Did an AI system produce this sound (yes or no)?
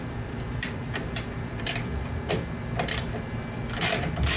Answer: yes